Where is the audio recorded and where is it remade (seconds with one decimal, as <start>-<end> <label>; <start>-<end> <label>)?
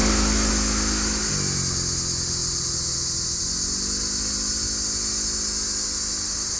0.0-6.6 recorded